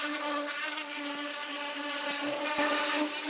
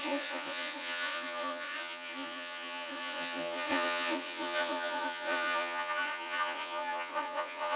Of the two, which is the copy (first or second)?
second